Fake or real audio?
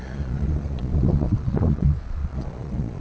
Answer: fake